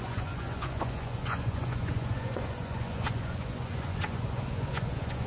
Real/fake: fake